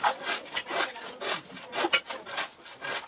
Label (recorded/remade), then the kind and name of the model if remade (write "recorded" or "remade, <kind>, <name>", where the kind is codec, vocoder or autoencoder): recorded